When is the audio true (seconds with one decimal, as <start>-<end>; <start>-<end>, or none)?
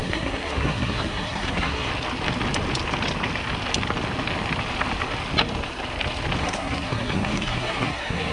1.9-6.4